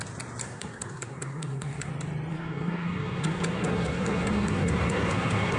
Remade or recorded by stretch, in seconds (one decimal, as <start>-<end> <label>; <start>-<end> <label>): 0.0-0.4 recorded; 0.4-1.9 remade; 1.9-2.3 recorded; 2.3-5.6 remade